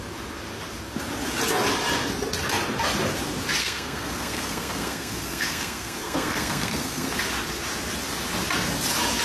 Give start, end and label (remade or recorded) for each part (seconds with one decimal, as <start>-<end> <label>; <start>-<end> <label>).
0.0-3.6 recorded; 3.6-7.1 remade; 7.1-9.2 recorded